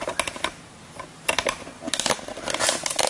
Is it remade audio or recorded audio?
recorded